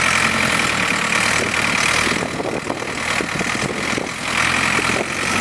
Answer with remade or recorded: recorded